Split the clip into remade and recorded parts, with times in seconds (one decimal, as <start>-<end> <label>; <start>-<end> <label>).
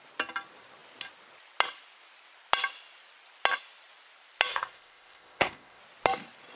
0.0-4.5 recorded; 4.5-5.8 remade; 5.8-6.6 recorded